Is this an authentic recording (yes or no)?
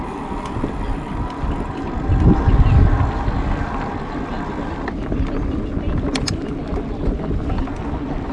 yes